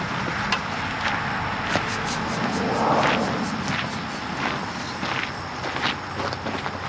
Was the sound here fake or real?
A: real